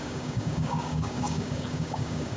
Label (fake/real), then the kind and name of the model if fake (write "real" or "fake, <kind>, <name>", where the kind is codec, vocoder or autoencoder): fake, codec, DAC